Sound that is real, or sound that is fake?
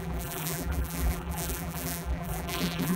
fake